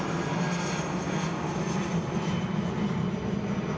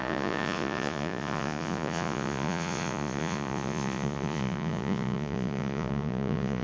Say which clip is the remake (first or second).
second